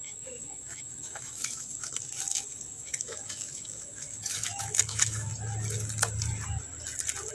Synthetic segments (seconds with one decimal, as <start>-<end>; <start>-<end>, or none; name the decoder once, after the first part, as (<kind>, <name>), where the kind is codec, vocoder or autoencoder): 0.0-5.3 (autoencoder, DAC-VAE)